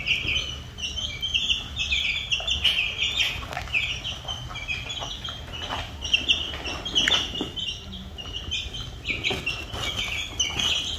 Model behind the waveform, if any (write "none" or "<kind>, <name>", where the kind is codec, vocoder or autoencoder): none